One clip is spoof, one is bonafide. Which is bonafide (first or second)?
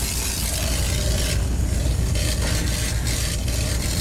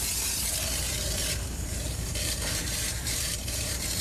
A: first